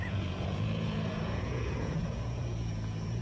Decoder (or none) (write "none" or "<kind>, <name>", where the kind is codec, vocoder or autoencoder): vocoder, Vocos